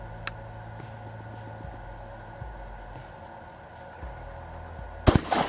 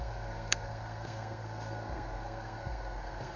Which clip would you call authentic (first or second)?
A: first